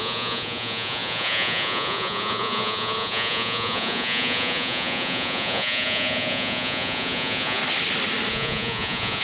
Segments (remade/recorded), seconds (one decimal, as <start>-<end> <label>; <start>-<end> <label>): 0.0-7.6 remade; 7.6-8.3 recorded; 8.3-9.2 remade